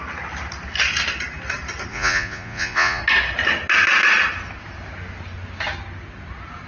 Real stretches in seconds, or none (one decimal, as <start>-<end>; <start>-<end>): 0.0-1.9; 3.0-6.7